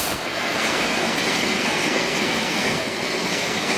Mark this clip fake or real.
fake